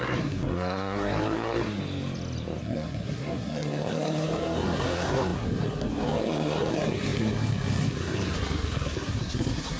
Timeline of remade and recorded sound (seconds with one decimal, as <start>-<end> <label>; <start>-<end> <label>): 0.0-1.8 remade; 1.8-2.6 recorded; 2.6-9.8 remade